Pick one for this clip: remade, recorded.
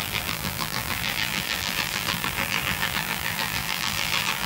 remade